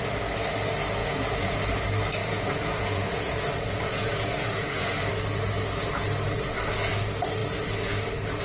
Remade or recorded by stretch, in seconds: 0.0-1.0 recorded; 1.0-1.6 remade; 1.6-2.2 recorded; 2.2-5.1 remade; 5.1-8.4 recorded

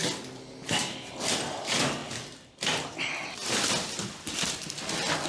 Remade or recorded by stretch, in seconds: 0.0-5.3 recorded